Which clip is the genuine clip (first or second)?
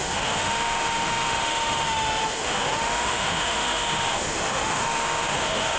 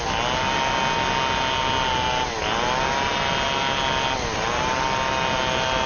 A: second